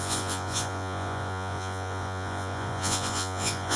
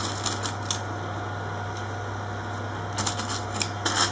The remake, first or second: first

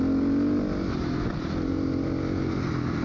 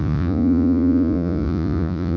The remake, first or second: second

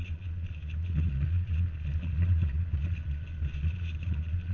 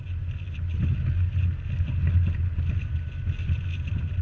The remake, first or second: first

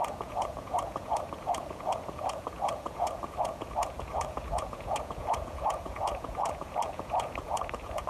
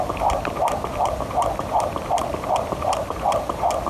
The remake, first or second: first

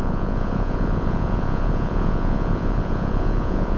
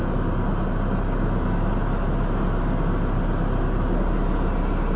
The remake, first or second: first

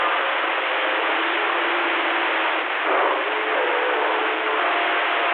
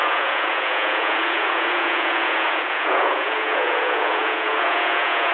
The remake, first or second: second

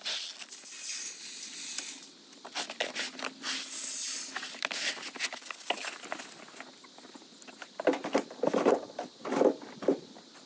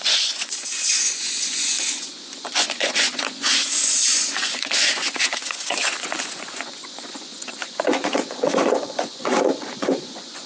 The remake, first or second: second